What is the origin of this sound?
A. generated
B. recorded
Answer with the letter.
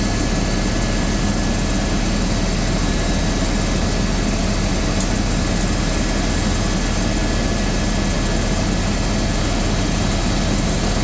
B